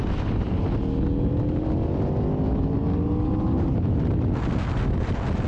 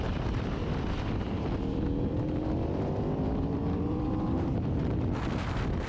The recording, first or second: first